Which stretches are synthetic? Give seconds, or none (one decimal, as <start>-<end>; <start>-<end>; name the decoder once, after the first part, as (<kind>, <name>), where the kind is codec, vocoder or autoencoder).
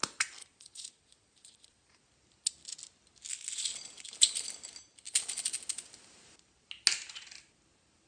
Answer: 0.4-2.0 (vocoder, Vocos)